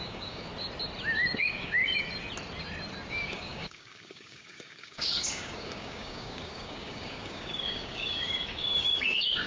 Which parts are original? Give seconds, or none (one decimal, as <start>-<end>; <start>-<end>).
0.5-1.4; 1.8-3.1

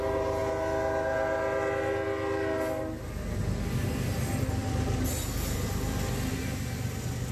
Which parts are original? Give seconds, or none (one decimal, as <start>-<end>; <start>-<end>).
0.0-7.3

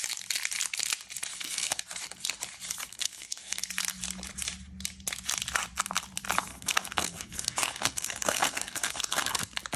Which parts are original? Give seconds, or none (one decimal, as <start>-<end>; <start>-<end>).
0.0-1.3; 1.8-2.9; 3.6-6.5; 9.4-9.8

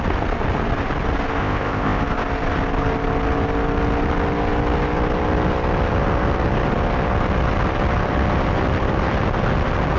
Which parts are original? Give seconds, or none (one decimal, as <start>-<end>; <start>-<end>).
0.0-1.4; 2.0-10.0

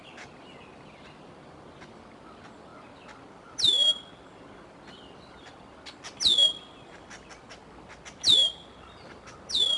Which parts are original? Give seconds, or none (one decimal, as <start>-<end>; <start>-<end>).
0.0-9.8

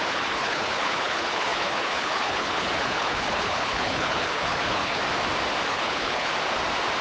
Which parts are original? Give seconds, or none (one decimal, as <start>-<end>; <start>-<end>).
5.0-5.7; 6.3-7.0